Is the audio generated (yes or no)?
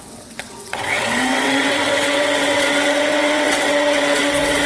yes